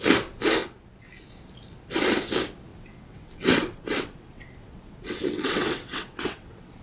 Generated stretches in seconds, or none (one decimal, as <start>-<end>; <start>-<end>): 2.7-6.8

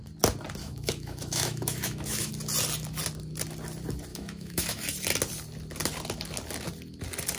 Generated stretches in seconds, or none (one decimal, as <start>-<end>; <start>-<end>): 0.6-2.3; 4.1-4.8

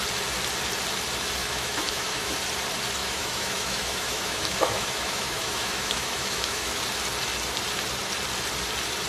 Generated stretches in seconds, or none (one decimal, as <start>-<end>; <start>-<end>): 1.4-2.3; 3.0-6.8